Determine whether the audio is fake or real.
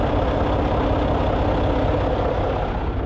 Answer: real